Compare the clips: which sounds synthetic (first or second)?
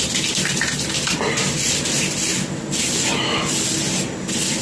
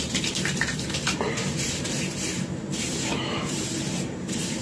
second